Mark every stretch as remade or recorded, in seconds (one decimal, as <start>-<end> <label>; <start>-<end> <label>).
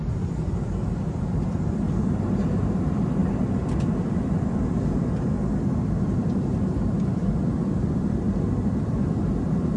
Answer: 0.0-9.8 remade